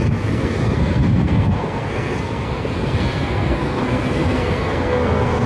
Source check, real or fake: fake